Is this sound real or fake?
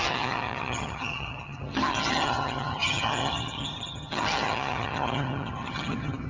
fake